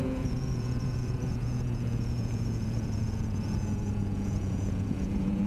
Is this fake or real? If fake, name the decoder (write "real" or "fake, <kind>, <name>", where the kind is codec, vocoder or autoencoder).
fake, vocoder, Vocos